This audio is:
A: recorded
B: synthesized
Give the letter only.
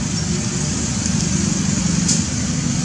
A